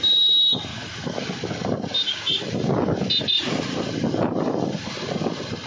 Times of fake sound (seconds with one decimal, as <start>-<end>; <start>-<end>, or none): 0.7-1.2